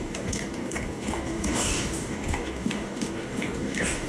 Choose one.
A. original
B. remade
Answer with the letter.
B